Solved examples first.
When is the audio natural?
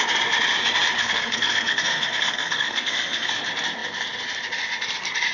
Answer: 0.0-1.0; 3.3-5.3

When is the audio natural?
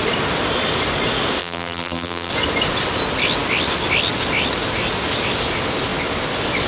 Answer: 0.0-1.4; 2.3-6.7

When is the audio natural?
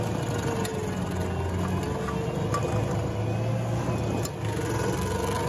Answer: 0.0-5.5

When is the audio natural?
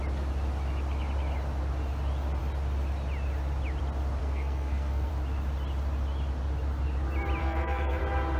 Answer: 0.0-4.2; 5.1-7.4; 8.0-8.4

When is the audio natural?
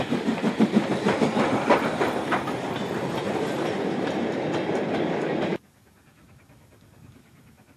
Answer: 0.4-4.9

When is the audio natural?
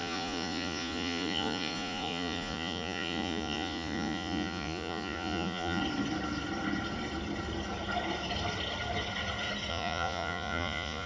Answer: 5.8-9.7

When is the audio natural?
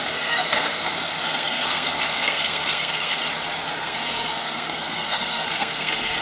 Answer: 3.2-3.7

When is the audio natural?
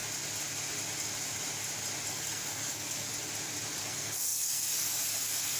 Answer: 0.0-2.1; 3.1-3.8